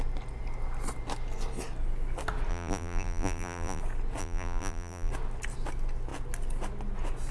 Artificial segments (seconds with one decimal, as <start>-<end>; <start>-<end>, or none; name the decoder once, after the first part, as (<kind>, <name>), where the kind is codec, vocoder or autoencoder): 2.5-3.8 (vocoder, BigVGAN v2); 4.2-5.1